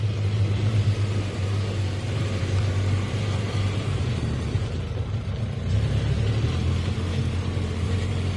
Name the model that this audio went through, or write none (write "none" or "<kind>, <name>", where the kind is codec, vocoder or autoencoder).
vocoder, BigVGAN v2